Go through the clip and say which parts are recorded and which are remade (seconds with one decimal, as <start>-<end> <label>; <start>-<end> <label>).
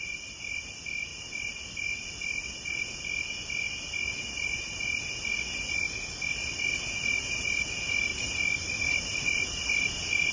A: 0.0-1.1 recorded; 1.1-2.9 remade; 2.9-8.1 recorded; 8.1-10.3 remade